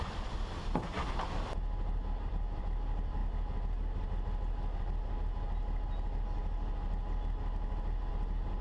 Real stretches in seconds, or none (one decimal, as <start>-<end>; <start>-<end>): 3.2-8.1